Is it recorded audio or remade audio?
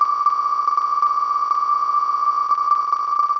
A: recorded